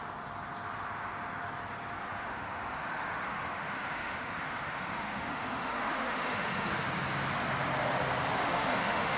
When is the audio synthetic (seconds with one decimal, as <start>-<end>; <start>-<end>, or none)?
2.0-6.7; 8.4-9.2